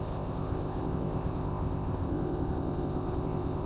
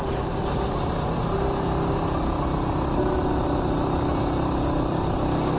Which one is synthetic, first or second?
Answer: first